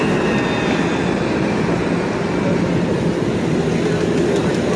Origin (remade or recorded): recorded